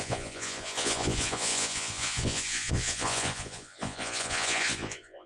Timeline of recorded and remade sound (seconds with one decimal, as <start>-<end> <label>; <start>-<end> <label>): 0.0-5.3 remade